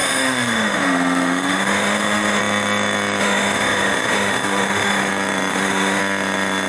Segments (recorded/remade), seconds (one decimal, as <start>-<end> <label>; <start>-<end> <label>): 0.0-2.4 remade; 2.4-3.2 recorded; 3.2-5.1 remade; 5.1-5.5 recorded; 5.5-6.0 remade; 6.0-6.7 recorded